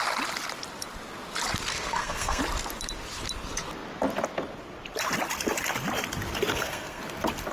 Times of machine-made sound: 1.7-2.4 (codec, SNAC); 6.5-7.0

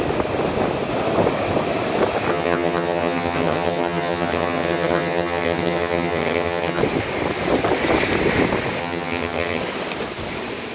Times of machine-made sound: 2.3-6.8 (vocoder, HiFi-GAN); 8.8-9.6

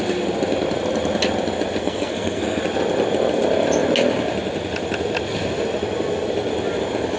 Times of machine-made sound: 1.8-2.6 (codec, SNAC)

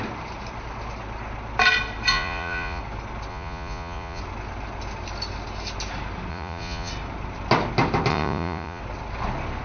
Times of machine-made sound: 2.1-2.8 (vocoder, Vocos); 3.3-4.2; 6.3-6.9; 8.1-8.8

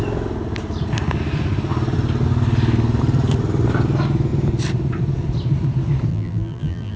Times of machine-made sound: 6.1-7.0 (vocoder, BigVGAN v2)

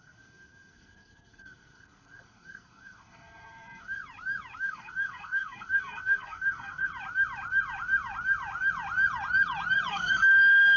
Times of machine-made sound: 0.0-4.0 (codec, SNAC); 4.6-6.9; 9.9-10.8

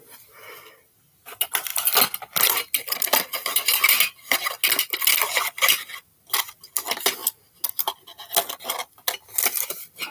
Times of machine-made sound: none